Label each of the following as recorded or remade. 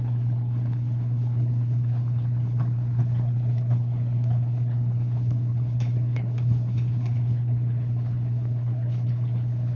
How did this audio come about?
remade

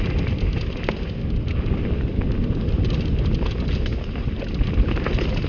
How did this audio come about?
recorded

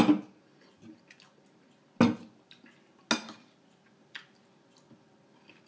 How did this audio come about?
recorded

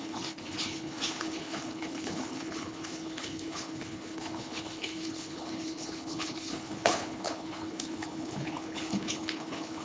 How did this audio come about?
remade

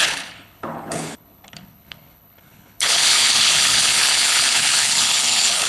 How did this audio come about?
remade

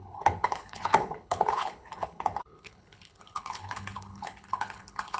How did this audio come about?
remade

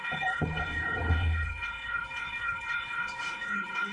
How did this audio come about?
remade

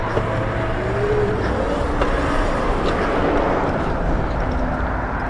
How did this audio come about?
recorded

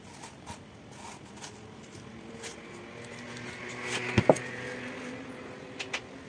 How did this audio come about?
recorded